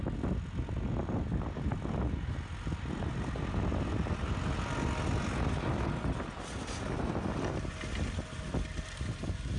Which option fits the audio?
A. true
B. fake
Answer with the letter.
A